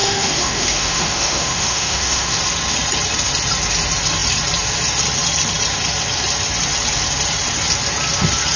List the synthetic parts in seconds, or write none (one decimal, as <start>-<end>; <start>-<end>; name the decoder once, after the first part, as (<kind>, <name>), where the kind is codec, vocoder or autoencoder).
0.0-2.4 (autoencoder, DAC-VAE)